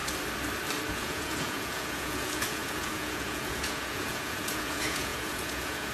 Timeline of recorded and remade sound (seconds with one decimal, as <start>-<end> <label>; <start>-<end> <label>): 0.0-0.9 recorded; 0.9-5.9 remade